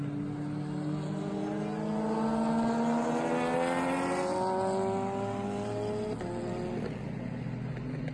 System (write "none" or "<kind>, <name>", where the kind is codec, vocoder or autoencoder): none